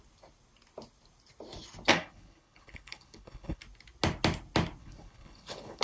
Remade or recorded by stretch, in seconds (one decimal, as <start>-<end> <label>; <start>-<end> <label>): 0.0-1.9 recorded; 1.9-3.6 remade; 3.6-4.8 recorded; 4.8-5.8 remade